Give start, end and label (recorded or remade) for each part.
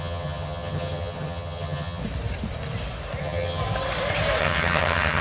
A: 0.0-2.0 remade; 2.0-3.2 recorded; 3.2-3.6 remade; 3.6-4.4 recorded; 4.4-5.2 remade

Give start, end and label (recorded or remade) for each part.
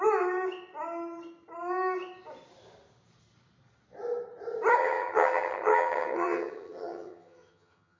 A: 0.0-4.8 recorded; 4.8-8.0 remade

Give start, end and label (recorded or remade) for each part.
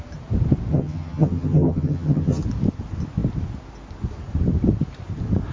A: 0.0-0.7 recorded; 0.7-2.4 remade; 2.4-5.5 recorded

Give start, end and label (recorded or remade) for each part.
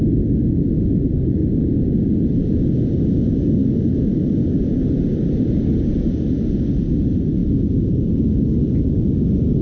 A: 0.0-9.6 recorded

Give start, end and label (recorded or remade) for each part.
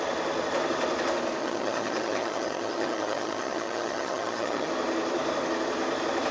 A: 0.0-1.4 recorded; 1.4-4.7 remade; 4.7-6.3 recorded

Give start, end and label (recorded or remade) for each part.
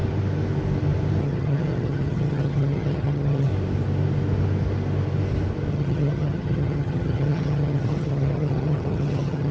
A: 0.0-1.2 recorded; 1.2-3.5 remade; 3.5-5.7 recorded; 5.7-9.5 remade